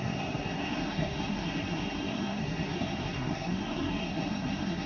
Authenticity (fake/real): fake